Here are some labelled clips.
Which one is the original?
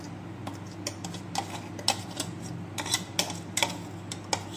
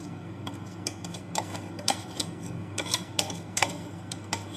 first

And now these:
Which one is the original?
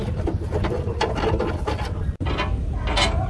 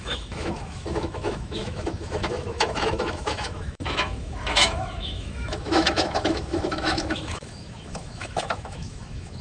first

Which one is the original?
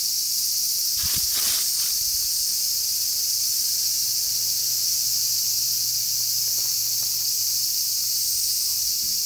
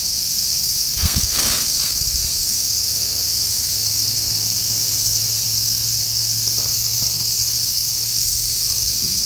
first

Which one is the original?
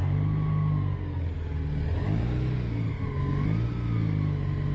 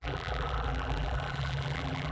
first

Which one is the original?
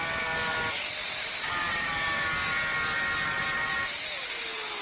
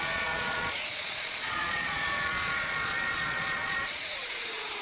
first